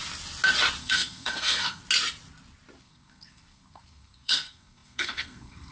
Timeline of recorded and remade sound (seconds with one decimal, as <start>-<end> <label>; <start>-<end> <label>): 0.0-0.8 recorded; 0.8-1.8 remade; 1.8-2.8 recorded; 2.8-5.7 remade